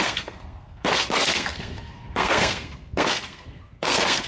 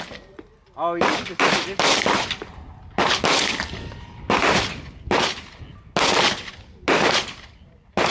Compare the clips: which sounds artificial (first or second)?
first